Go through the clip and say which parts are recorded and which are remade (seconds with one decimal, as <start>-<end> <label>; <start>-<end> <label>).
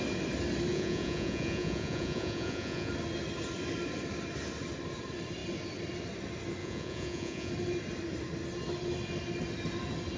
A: 0.0-0.7 recorded; 0.7-2.9 remade; 2.9-6.6 recorded; 6.6-7.5 remade; 7.5-10.2 recorded